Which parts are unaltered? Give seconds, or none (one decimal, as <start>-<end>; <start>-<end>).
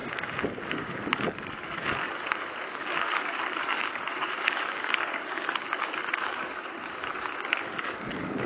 0.0-0.7